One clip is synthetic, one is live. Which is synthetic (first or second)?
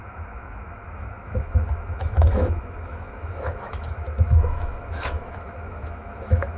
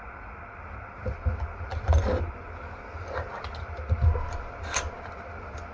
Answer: first